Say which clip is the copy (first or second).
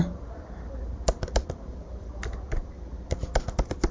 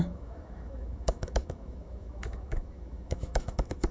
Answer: second